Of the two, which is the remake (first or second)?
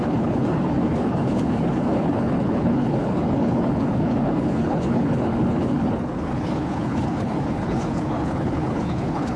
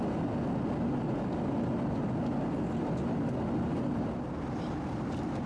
first